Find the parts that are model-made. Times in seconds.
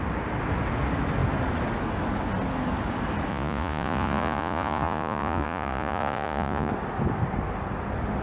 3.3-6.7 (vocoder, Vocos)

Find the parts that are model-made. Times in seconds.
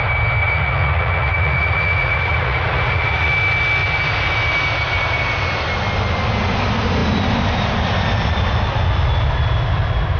0.4-3.3 (vocoder, Vocos)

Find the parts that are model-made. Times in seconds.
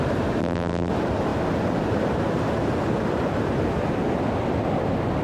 0.4-0.9 (vocoder, BigVGAN v2)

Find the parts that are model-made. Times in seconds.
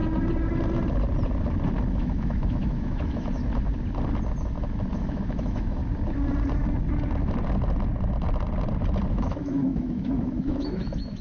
1.9-3.4 (autoencoder, DAC-VAE); 4.9-5.8; 9.1-11.2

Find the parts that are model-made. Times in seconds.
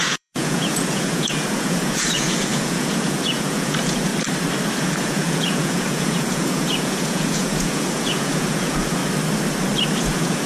0.0-4.1 (vocoder, Vocos); 4.8-9.0; 10.0-10.5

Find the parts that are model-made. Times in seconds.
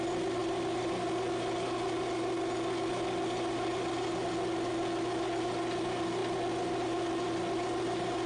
none